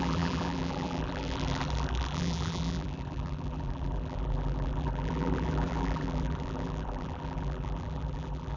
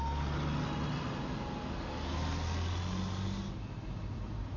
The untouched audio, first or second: second